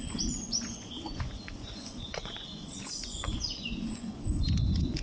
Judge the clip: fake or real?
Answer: fake